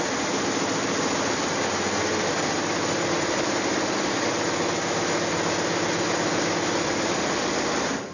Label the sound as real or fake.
real